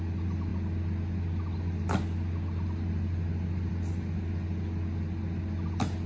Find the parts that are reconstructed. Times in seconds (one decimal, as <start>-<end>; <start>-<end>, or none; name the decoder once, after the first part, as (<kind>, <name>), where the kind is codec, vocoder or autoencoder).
none